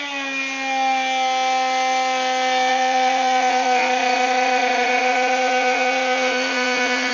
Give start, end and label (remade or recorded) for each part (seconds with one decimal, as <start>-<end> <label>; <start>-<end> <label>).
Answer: 0.0-2.7 recorded; 2.7-7.1 remade